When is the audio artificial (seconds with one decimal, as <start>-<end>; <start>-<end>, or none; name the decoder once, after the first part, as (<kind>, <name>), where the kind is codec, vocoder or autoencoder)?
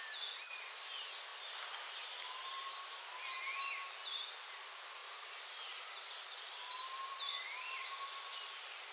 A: 5.0-8.9 (vocoder, BigVGAN v2)